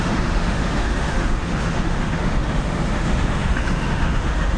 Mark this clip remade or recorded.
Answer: remade